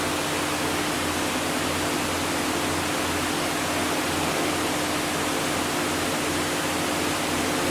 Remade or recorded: recorded